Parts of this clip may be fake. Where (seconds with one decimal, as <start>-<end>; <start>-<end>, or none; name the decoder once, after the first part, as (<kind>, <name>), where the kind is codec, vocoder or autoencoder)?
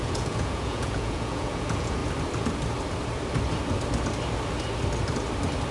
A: 0.0-2.0 (vocoder, Vocos)